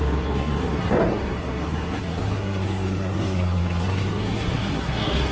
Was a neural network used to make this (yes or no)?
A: yes